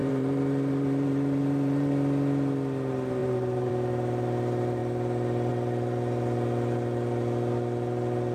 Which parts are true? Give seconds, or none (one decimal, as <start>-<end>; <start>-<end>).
1.9-3.2; 3.7-8.3